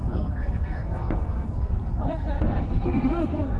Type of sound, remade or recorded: remade